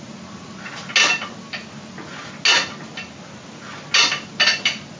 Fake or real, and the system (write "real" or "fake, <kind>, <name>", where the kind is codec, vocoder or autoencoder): real